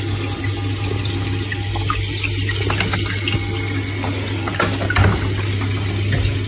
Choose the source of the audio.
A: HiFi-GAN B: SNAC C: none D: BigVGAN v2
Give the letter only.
C